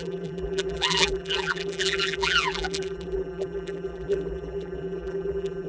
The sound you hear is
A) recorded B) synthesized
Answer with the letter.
B